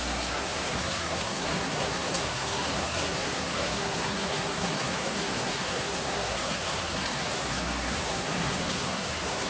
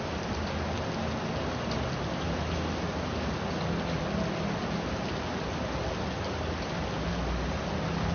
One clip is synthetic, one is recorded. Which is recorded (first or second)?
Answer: second